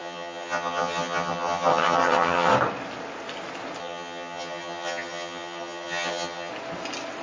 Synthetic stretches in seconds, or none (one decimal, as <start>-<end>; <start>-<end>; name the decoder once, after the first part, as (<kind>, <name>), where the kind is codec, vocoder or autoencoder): 0.0-2.5 (vocoder, HiFi-GAN); 3.8-6.5